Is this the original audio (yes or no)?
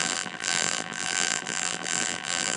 no